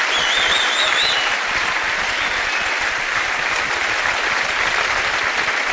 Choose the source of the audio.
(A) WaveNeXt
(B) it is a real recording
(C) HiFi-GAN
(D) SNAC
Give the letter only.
B